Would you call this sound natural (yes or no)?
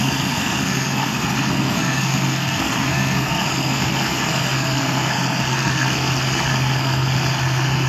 no